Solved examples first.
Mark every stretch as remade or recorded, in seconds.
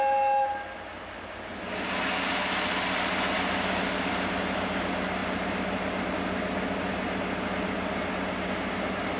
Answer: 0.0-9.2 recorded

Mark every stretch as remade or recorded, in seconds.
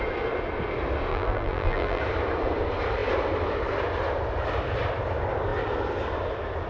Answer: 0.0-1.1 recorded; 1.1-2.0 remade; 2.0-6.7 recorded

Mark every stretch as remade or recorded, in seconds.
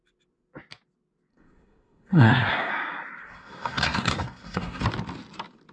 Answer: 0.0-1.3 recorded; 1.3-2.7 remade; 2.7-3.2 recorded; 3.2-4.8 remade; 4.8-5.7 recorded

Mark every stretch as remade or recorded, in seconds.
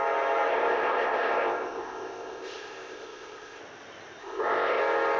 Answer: 0.0-0.5 recorded; 0.5-3.6 remade; 3.6-4.2 recorded; 4.2-4.8 remade; 4.8-5.2 recorded